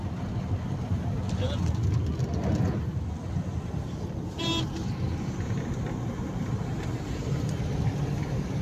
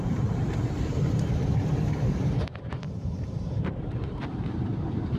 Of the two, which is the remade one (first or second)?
second